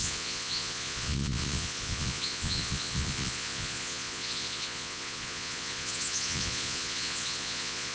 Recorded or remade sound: remade